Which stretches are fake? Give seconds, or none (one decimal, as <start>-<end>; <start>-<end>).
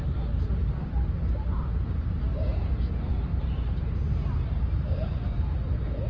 0.6-2.7; 3.3-5.4